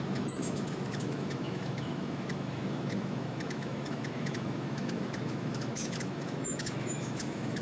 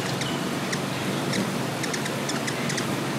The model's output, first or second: first